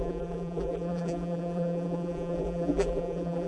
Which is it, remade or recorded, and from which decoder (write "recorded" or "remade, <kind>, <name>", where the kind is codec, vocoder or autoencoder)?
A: remade, vocoder, BigVGAN v2